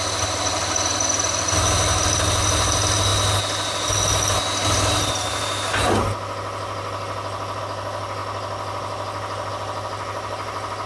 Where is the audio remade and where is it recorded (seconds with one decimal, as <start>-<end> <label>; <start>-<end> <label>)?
0.0-10.9 recorded